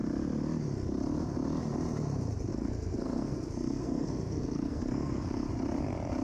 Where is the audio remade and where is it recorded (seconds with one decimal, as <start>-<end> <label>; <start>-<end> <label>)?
0.0-2.5 recorded; 2.5-5.5 remade; 5.5-6.2 recorded